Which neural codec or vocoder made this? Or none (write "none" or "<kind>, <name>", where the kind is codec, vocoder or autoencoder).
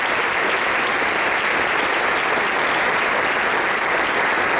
none